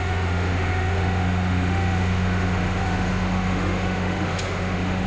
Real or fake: fake